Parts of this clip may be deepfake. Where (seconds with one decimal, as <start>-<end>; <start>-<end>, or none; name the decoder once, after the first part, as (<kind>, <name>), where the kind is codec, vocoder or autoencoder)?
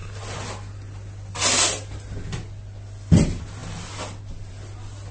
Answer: none